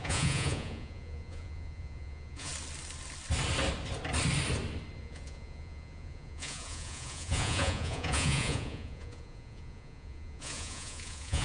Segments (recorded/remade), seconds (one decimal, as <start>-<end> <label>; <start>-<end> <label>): 0.0-2.5 remade; 2.5-5.0 recorded; 5.0-11.4 remade